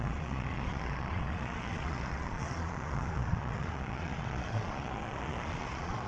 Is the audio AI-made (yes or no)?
yes